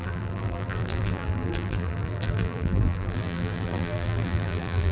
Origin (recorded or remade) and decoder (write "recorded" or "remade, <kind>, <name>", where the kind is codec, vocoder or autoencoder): remade, vocoder, BigVGAN v2